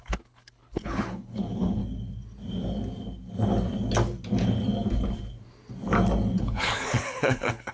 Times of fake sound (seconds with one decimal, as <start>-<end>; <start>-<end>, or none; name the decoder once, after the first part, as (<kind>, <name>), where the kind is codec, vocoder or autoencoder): 0.0-1.8 (codec, HILCodec); 6.4-7.7